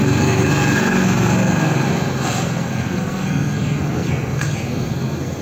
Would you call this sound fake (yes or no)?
yes